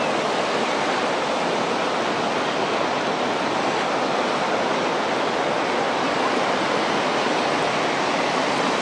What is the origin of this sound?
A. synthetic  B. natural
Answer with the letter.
B